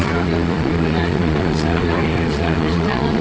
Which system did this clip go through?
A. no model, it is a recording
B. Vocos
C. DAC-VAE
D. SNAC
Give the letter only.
B